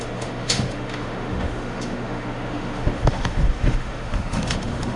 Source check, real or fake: fake